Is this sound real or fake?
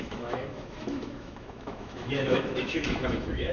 fake